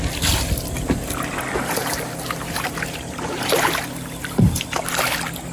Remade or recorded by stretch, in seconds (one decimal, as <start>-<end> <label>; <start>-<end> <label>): 0.0-1.8 recorded; 1.8-3.7 remade; 3.7-5.5 recorded